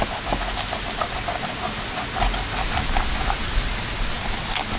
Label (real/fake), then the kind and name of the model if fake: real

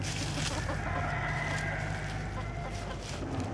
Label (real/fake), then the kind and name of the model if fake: real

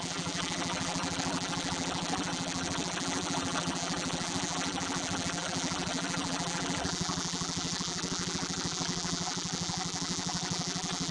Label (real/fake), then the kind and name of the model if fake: fake, vocoder, BigVGAN v2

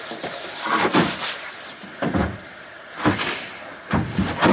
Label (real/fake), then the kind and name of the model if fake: fake, vocoder, BigVGAN v2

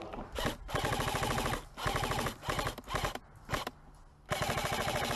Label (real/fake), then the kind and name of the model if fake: real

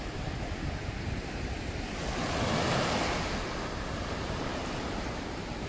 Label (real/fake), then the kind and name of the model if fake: fake, vocoder, BigVGAN v2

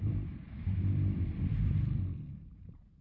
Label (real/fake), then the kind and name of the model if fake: fake, vocoder, BigVGAN v2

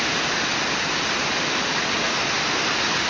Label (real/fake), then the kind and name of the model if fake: real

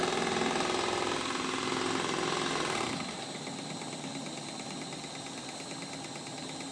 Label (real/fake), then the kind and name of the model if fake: real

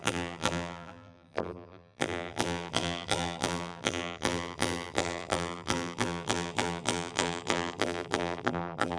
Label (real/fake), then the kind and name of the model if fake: fake, vocoder, BigVGAN v2